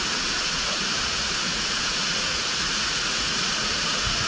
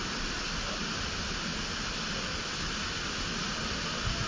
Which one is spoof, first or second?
first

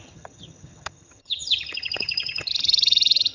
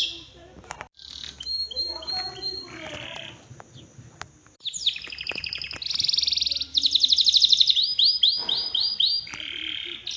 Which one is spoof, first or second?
first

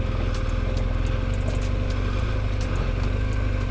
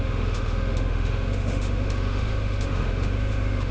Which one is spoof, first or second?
second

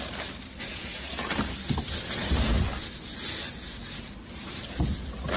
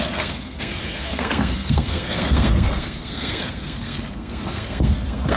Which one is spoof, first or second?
second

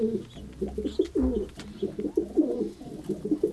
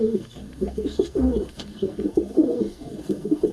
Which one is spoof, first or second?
second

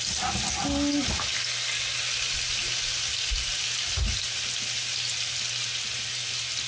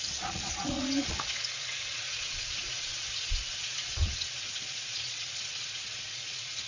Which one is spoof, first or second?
second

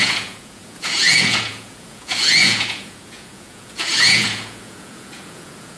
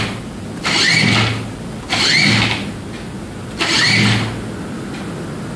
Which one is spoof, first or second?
first